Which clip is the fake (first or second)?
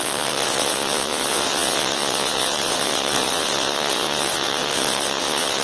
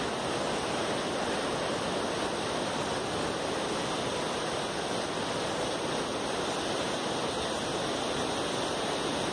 first